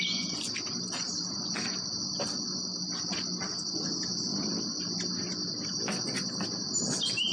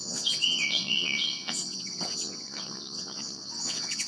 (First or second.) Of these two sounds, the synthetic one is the second